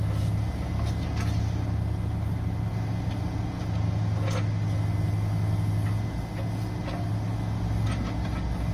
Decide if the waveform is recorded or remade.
recorded